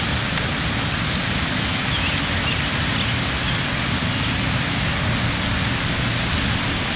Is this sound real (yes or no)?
yes